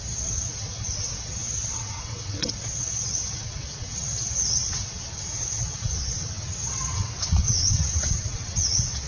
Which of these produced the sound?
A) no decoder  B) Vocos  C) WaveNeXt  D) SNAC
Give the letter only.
C